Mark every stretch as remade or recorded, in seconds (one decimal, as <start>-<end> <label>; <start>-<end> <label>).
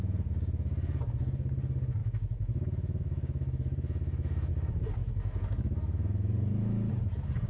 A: 0.0-2.0 recorded; 2.0-4.5 remade; 4.5-5.0 recorded; 5.0-6.9 remade; 6.9-7.5 recorded